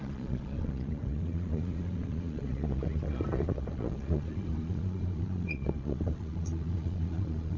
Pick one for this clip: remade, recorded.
remade